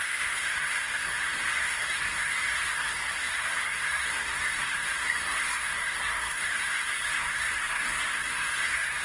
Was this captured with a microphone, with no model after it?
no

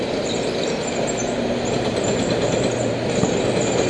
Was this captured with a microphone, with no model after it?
no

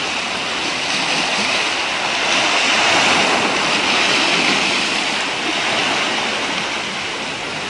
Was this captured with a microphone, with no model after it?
yes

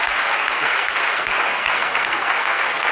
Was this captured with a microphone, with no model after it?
no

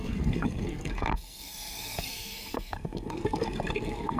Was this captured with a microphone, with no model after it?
no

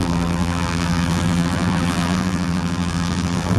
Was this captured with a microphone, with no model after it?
no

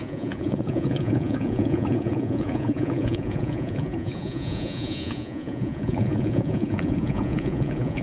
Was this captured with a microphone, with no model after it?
no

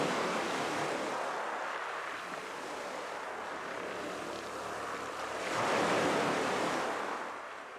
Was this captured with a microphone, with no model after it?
yes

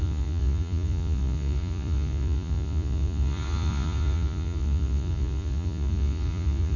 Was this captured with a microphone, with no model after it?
no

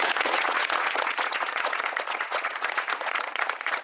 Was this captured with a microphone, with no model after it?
no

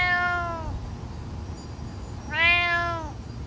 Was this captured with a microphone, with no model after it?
yes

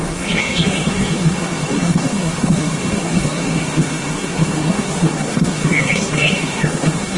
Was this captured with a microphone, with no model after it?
no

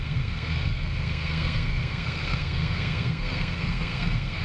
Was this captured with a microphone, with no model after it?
no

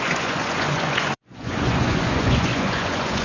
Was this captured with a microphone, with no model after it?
no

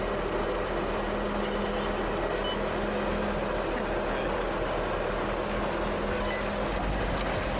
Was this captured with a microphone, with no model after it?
yes